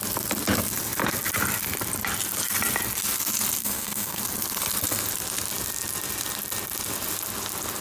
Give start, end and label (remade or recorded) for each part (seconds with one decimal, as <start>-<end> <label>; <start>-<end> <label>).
0.0-3.6 recorded; 3.6-4.2 remade; 4.2-7.8 recorded